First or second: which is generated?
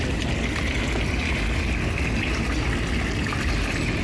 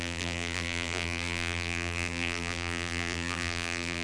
second